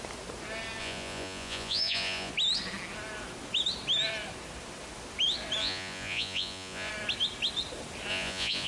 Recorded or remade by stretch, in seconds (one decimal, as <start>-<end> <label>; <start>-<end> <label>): 0.0-0.8 recorded; 0.8-2.3 remade; 2.3-5.6 recorded; 5.6-6.9 remade; 6.9-8.1 recorded; 8.1-8.7 remade